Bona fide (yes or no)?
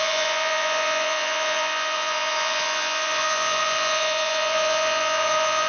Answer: no